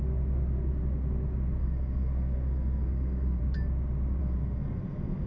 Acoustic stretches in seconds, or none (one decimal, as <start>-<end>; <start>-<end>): 0.0-1.6; 3.4-4.2

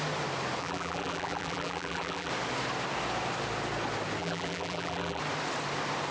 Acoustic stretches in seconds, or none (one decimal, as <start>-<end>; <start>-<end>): 0.0-0.6; 2.3-4.2; 5.2-6.1

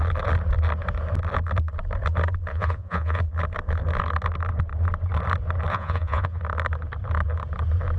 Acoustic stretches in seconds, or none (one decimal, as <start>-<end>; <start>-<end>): 0.0-2.5; 3.2-5.7; 6.4-8.0

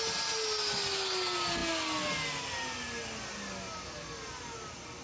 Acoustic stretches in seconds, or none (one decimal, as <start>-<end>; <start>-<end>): 0.0-5.0

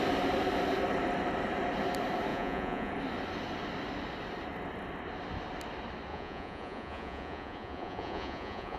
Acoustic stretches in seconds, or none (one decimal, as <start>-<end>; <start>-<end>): 0.0-2.3; 2.9-6.1

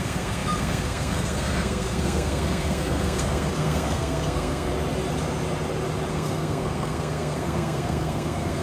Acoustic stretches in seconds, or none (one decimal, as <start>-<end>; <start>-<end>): 4.7-6.1

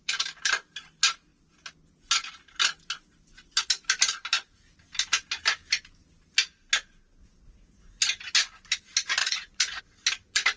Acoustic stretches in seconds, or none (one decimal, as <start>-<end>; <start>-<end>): 0.0-7.2; 8.0-9.2; 9.8-10.6